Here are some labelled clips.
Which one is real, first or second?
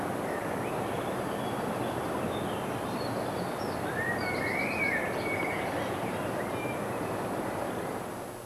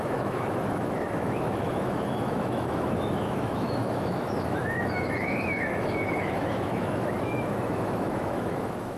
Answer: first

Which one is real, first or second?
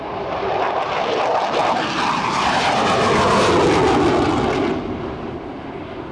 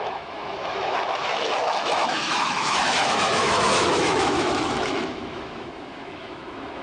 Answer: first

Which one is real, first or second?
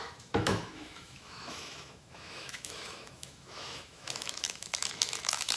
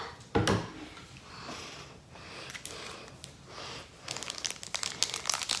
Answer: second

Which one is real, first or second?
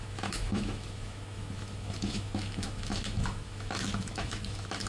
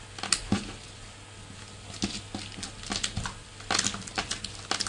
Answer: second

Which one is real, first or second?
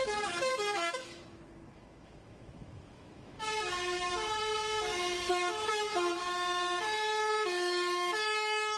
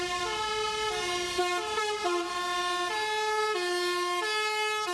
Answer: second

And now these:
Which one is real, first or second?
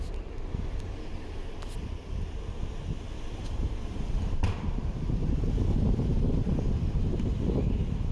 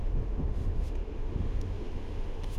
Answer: first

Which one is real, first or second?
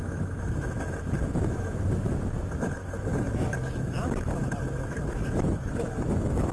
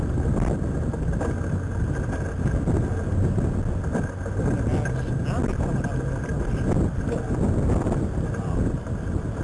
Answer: second